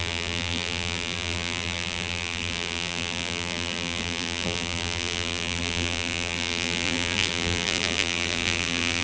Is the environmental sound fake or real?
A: fake